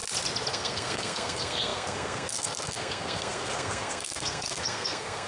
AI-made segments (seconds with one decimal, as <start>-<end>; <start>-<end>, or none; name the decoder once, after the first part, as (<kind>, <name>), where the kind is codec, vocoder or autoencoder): 0.5-5.3 (codec, SNAC)